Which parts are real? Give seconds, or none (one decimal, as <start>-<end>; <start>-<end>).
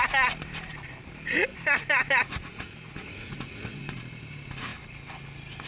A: 0.0-2.5; 4.0-5.7